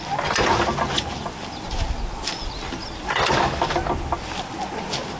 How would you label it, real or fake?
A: real